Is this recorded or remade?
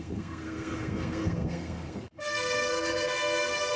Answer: remade